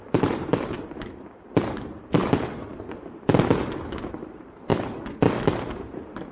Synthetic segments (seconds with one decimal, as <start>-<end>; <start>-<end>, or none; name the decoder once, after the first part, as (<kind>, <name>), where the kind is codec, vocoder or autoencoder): 0.0-0.5 (vocoder, BigVGAN v2); 1.6-2.2; 3.9-4.7; 5.7-6.3